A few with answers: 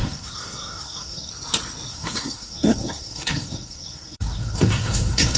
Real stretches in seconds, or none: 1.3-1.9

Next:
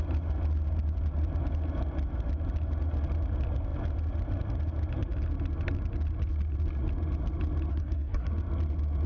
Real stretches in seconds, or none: 0.0-7.7; 8.3-9.1

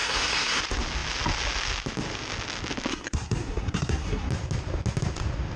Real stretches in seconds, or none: 0.6-2.9; 4.3-5.6

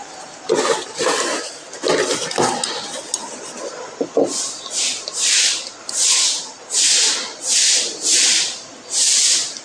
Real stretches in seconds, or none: 0.0-9.6

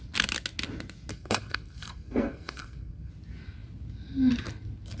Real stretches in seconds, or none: 0.0-1.1; 3.1-5.0